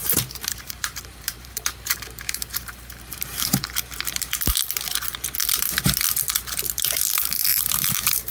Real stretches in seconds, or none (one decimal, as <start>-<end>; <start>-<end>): 3.6-7.5